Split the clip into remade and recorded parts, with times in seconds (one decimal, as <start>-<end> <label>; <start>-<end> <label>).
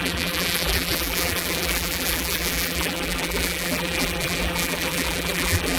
0.0-5.8 remade